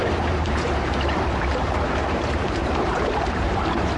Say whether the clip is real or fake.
fake